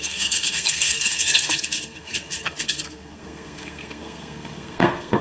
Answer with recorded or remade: remade